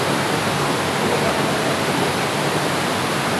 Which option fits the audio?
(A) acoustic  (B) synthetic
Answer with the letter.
A